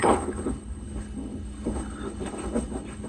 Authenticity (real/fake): fake